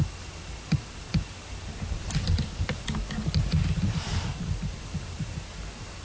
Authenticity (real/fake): real